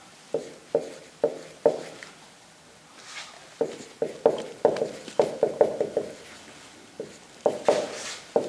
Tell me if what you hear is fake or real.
real